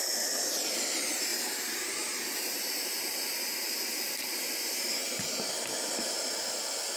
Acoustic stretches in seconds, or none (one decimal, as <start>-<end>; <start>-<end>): 0.0-1.3; 5.5-7.0